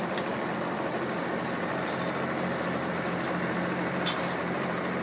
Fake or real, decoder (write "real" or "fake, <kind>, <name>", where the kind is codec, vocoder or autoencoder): real